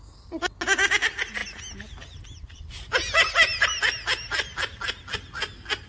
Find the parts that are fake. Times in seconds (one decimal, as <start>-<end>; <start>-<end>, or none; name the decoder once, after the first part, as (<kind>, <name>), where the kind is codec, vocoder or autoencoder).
none